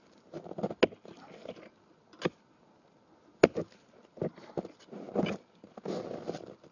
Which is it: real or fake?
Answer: real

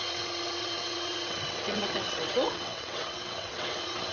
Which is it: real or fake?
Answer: fake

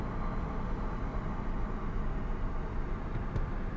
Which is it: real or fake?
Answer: real